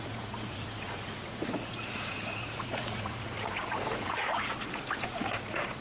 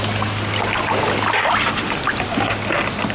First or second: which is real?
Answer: second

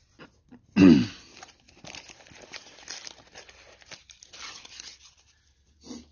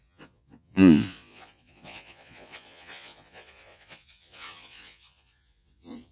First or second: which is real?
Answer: first